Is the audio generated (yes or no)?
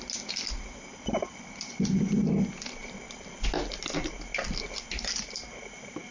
no